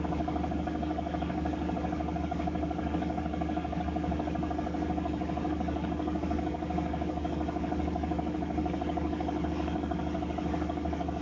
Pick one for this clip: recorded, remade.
remade